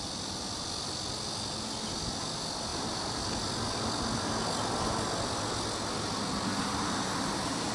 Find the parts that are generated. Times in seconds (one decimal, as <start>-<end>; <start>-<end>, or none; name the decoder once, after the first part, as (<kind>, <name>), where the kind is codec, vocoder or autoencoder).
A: 6.5-7.7 (vocoder, BigVGAN v2)